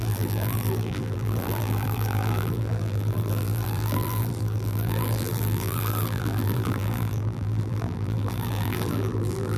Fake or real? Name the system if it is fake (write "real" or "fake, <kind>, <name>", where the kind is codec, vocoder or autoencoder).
fake, vocoder, BigVGAN v2